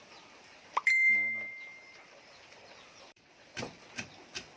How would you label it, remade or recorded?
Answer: remade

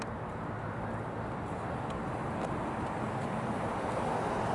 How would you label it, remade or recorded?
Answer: recorded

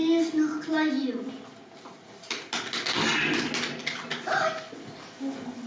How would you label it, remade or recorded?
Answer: recorded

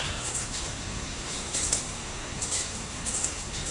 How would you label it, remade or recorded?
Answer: remade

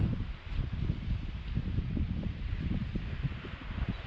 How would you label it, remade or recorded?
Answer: recorded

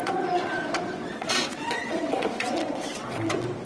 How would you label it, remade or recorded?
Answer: remade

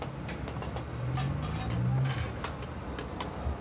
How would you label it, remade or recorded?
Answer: recorded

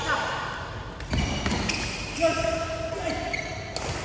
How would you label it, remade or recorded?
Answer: recorded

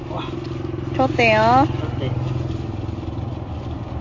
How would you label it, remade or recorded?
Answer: recorded